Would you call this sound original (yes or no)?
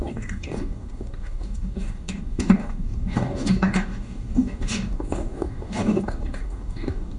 no